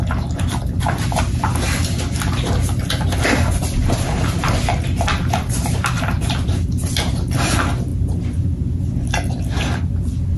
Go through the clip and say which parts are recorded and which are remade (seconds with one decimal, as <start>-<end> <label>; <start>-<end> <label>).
0.0-3.8 recorded; 3.8-6.5 remade; 6.5-10.4 recorded